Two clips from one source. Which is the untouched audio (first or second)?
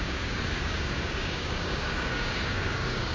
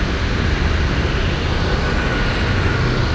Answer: second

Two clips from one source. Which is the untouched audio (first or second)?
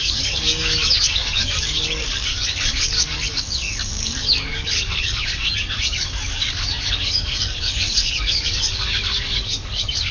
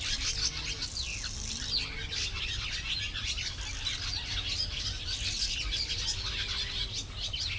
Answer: second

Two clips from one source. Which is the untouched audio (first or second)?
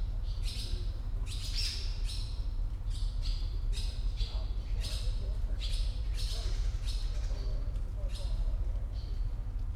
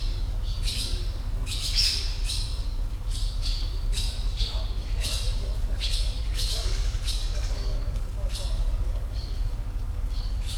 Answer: first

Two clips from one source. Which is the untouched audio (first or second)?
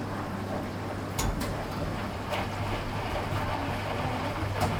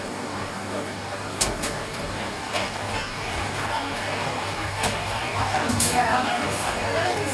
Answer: first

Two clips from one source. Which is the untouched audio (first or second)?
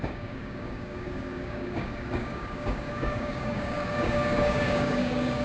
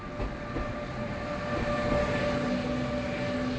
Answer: second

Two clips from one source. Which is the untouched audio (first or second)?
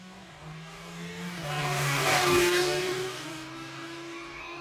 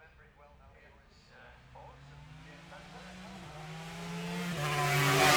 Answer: second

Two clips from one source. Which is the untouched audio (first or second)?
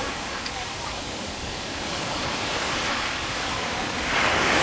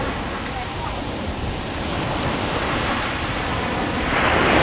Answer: second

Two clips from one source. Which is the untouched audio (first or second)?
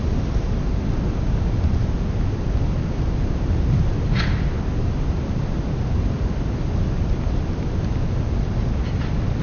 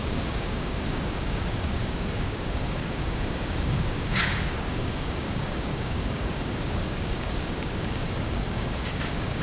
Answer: first